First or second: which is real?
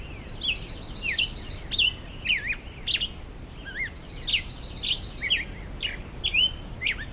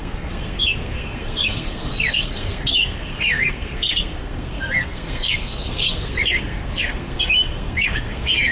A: first